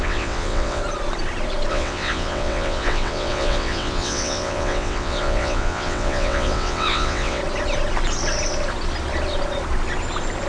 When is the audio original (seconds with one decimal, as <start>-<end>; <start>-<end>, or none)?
0.8-1.7; 7.4-10.5